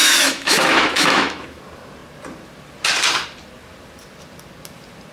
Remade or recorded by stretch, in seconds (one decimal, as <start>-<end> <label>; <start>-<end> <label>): 0.0-1.6 remade; 1.6-5.1 recorded